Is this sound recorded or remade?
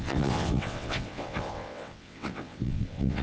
remade